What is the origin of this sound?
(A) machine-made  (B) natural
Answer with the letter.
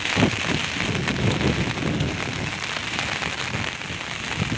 B